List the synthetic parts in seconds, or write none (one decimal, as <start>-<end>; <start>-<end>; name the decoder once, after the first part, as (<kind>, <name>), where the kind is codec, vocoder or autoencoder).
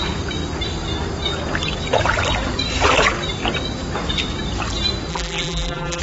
5.1-6.0 (vocoder, BigVGAN v2)